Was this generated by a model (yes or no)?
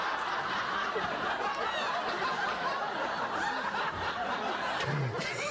no